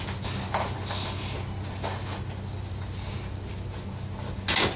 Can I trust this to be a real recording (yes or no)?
yes